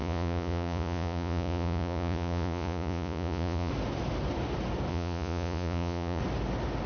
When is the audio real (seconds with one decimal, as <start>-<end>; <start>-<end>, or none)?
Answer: 3.7-4.9; 6.2-6.9